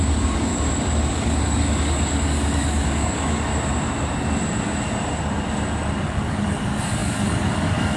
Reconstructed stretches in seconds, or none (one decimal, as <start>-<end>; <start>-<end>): 0.0-0.5; 1.1-3.5; 6.0-8.0